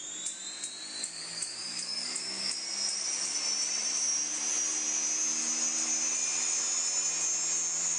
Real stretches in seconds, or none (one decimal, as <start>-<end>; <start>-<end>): 0.0-1.0; 2.5-8.0